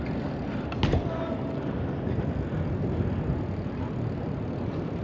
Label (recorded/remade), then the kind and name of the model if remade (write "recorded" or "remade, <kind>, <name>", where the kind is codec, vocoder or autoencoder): recorded